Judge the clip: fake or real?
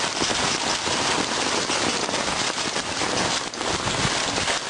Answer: real